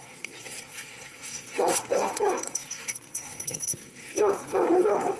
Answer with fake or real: fake